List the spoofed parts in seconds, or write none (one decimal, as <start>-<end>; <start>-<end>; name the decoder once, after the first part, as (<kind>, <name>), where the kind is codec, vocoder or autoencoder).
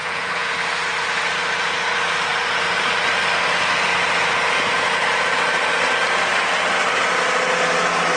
0.0-0.5 (vocoder, Vocos)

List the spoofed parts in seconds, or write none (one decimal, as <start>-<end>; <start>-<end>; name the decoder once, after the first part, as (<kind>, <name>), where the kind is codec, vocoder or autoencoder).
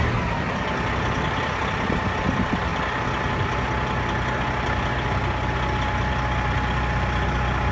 none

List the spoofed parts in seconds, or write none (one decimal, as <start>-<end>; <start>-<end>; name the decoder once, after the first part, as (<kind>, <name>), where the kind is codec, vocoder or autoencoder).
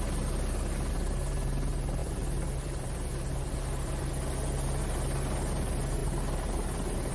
2.0-4.1 (vocoder, BigVGAN v2)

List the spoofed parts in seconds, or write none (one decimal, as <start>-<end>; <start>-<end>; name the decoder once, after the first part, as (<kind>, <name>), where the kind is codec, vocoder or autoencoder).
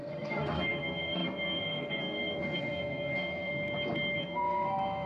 0.0-3.5 (codec, SNAC); 4.2-5.1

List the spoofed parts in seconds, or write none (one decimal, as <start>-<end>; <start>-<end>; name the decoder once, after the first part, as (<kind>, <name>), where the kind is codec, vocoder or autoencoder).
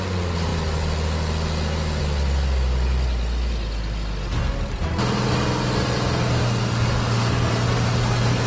none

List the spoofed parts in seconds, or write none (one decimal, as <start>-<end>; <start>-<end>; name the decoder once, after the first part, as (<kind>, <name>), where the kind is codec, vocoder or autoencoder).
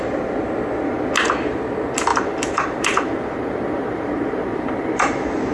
2.1-5.5 (vocoder, BigVGAN v2)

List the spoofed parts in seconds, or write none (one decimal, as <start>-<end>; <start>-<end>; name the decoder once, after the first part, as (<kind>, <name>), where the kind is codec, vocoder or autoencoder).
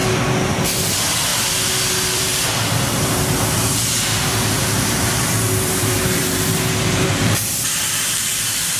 0.8-1.3 (vocoder, BigVGAN v2); 2.2-8.8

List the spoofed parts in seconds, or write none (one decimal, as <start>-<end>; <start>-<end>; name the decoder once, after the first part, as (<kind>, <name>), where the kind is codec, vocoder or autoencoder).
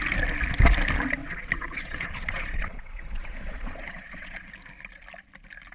1.2-4.5 (vocoder, Vocos)